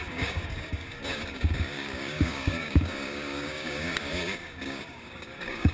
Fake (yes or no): yes